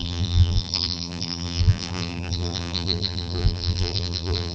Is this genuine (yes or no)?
no